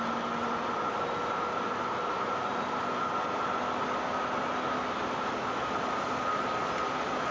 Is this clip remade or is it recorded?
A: recorded